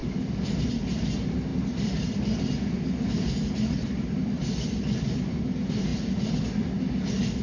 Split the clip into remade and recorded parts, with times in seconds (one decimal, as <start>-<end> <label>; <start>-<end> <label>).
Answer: 0.0-7.4 recorded